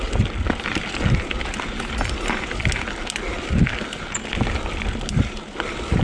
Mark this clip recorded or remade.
recorded